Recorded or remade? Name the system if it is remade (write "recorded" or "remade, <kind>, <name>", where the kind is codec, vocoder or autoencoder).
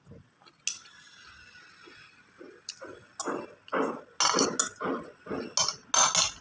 recorded